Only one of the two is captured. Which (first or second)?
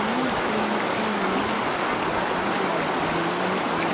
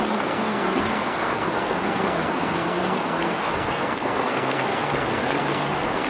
first